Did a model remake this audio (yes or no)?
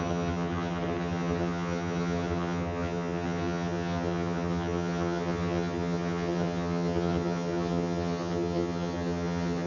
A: yes